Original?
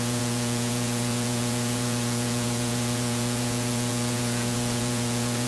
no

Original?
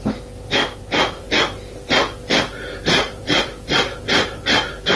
yes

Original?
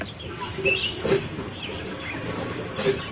yes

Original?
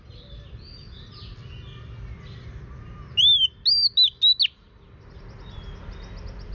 yes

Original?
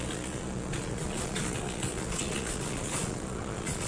no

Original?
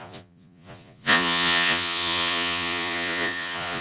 no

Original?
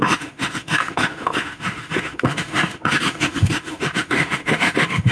no